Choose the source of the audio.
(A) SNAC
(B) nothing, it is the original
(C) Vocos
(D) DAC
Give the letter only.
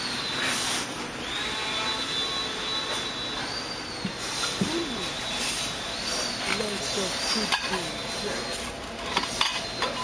B